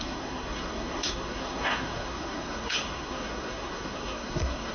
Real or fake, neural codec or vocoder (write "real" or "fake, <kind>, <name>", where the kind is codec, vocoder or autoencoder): fake, codec, SNAC